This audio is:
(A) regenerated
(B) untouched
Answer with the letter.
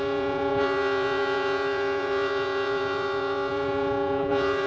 A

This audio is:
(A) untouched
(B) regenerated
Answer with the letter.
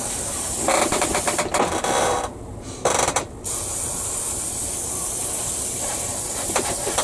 B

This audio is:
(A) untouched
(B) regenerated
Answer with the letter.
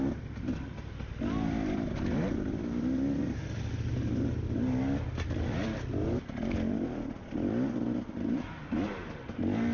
A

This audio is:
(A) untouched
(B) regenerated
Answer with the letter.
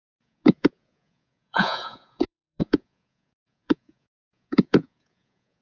B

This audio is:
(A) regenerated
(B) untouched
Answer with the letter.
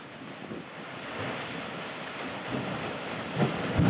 B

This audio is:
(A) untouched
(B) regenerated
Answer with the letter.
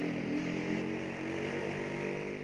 A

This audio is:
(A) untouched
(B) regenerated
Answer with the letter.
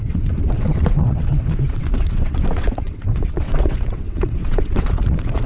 B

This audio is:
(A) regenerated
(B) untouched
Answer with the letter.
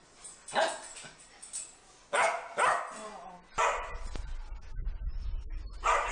B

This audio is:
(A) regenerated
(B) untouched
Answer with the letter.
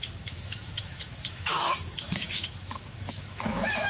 A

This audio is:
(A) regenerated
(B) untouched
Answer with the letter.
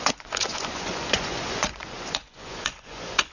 A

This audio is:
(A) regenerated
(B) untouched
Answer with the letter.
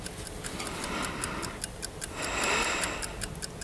B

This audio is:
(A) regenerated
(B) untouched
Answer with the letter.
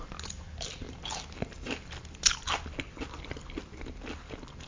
B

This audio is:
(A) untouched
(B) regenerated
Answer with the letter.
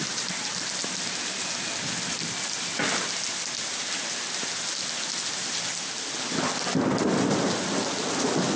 A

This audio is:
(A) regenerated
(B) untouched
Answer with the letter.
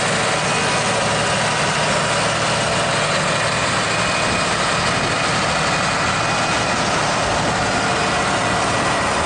B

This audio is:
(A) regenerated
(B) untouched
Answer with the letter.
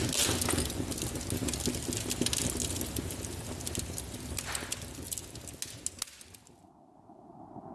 B